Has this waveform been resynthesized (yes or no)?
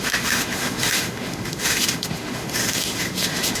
yes